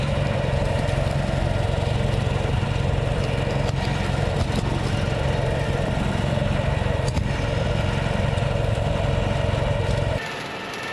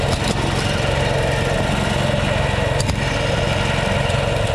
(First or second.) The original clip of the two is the second